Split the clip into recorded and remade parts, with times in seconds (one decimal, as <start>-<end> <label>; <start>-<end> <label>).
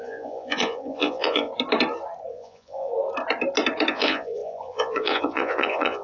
0.0-1.5 remade; 1.5-2.3 recorded; 2.3-2.9 remade; 2.9-3.9 recorded; 3.9-6.0 remade